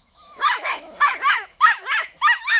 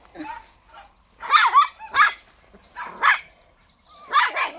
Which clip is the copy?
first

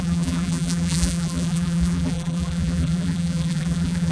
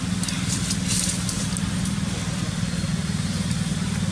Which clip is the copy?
first